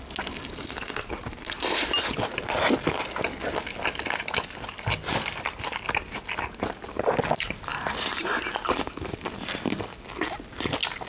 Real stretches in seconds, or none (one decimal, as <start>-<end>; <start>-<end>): 0.0-11.1